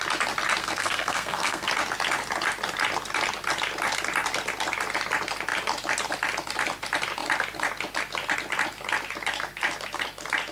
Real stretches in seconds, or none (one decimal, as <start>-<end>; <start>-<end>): 0.0-0.6; 1.7-10.5